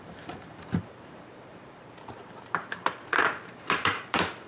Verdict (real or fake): fake